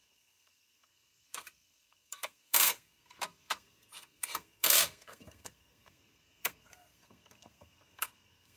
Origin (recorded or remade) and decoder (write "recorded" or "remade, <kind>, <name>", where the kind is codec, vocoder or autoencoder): remade, codec, SNAC